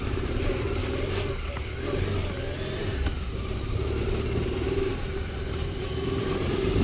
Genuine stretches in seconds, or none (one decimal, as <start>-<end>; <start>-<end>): 0.8-2.7